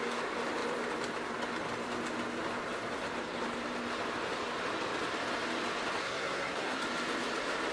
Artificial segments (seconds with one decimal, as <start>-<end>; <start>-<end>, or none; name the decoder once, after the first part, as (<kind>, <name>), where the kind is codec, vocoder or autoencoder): 6.0-6.8 (codec, SNAC)